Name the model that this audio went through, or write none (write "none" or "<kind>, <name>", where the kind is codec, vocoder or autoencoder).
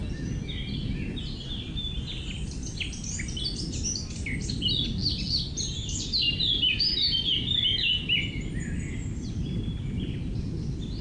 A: none